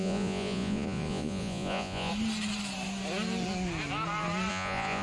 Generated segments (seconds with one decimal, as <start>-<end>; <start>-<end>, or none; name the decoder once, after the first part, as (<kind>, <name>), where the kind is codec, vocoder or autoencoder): 0.0-2.1 (vocoder, Vocos); 4.5-5.0